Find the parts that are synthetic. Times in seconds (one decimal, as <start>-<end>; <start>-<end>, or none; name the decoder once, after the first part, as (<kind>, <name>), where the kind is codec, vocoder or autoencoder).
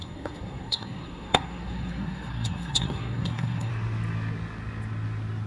0.0-3.7 (codec, SNAC)